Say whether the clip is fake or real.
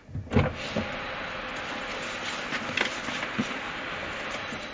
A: real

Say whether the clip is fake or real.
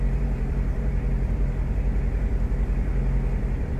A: fake